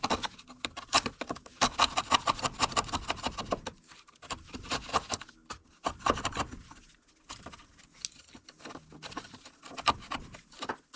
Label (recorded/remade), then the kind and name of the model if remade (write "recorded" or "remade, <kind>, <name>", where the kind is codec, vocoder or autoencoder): recorded